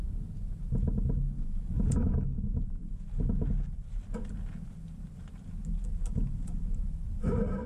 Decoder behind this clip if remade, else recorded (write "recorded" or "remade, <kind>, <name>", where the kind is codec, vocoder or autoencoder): recorded